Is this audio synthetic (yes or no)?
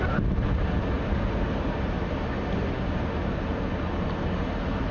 no